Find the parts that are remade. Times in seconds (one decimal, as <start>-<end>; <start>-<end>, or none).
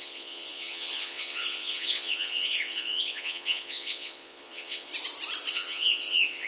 0.0-4.9; 5.5-6.5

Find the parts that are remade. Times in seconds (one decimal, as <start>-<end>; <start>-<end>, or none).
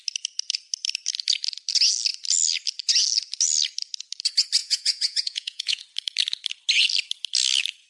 4.6-5.8